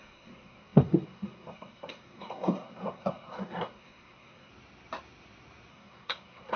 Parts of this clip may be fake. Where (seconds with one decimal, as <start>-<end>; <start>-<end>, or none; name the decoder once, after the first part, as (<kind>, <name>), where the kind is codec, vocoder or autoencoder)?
0.0-4.5 (codec, SNAC); 5.7-6.6